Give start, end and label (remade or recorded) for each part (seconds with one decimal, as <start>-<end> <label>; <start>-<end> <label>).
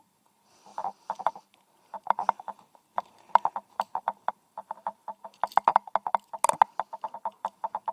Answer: 0.0-5.4 remade; 5.4-7.2 recorded; 7.2-7.9 remade